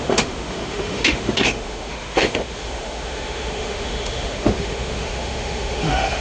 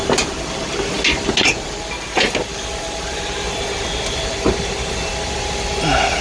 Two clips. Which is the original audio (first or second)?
second